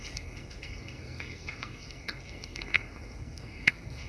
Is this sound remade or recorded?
remade